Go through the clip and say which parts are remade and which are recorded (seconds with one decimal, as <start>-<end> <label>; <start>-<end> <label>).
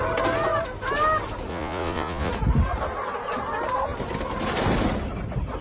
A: 0.0-1.5 recorded; 1.5-2.3 remade; 2.3-5.6 recorded